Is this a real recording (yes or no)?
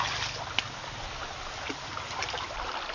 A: yes